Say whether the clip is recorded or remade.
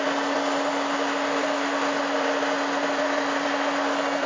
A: recorded